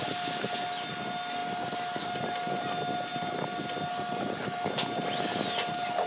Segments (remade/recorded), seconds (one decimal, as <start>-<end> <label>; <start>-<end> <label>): 0.0-6.1 recorded